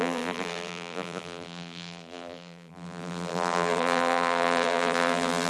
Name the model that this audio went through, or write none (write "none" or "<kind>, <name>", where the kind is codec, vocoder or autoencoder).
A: vocoder, BigVGAN v2